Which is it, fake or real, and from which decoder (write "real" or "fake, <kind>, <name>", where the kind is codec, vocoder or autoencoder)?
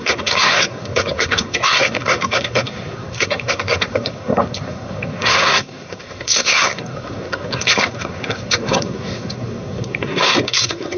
fake, codec, SNAC